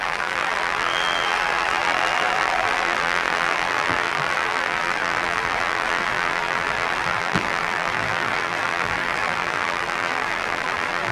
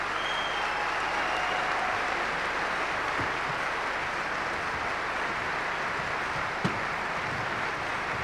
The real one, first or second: second